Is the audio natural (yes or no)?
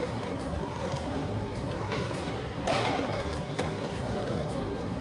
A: no